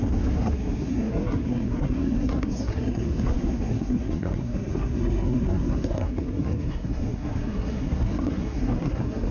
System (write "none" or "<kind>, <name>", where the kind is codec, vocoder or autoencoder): codec, SNAC